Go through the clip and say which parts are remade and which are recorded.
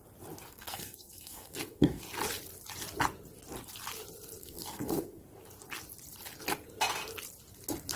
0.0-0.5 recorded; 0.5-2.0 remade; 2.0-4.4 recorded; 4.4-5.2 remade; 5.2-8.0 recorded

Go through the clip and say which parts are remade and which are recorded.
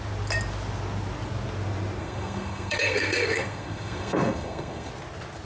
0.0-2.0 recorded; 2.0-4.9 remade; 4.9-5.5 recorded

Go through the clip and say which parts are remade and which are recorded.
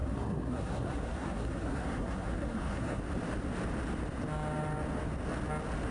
0.0-3.0 remade; 3.0-5.9 recorded